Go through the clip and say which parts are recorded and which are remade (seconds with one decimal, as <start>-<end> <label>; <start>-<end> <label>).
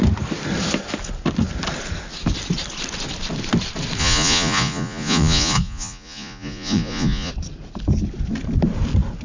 0.0-4.0 recorded; 4.0-7.3 remade; 7.3-9.2 recorded